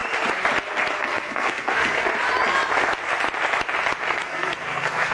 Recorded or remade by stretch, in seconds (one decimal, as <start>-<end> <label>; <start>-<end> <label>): 0.0-1.0 recorded; 1.0-2.1 remade; 2.1-4.1 recorded; 4.1-5.1 remade

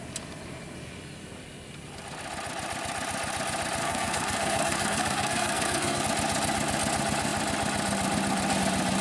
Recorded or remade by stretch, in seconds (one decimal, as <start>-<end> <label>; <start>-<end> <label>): 0.0-3.8 recorded; 3.8-6.0 remade; 6.0-9.0 recorded

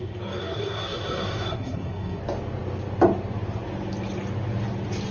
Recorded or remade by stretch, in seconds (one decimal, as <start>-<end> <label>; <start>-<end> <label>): 0.0-0.4 recorded; 0.4-2.2 remade; 2.2-5.1 recorded